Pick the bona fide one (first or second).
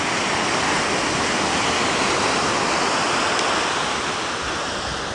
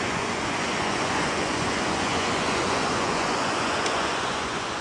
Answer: first